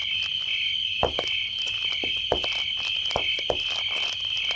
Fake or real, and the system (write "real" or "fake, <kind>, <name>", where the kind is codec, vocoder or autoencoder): real